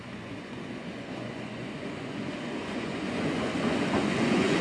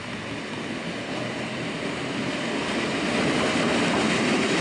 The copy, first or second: first